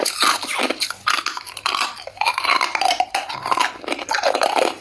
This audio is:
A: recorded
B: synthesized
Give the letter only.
A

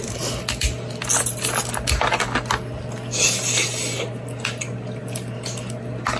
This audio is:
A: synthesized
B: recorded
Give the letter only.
B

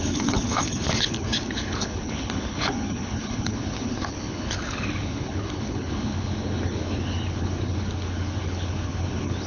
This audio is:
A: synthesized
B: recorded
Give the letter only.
A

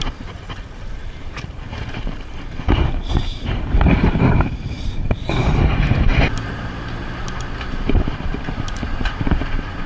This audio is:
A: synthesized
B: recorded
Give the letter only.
A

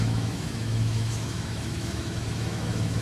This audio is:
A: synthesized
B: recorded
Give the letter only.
A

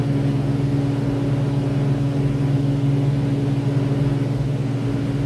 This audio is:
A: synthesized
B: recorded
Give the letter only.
B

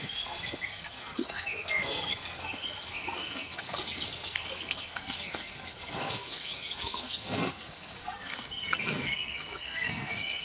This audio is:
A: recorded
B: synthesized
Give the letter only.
B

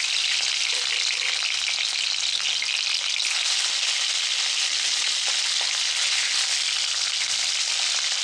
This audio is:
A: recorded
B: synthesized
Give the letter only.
A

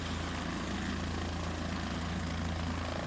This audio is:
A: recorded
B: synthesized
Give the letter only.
A